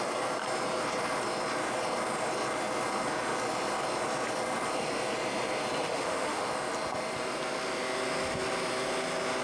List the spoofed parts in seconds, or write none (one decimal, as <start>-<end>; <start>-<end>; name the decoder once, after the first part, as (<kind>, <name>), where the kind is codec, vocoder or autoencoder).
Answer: 5.8-6.5 (autoencoder, DAC-VAE)